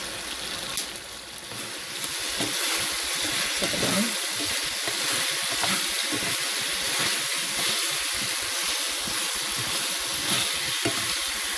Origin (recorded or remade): recorded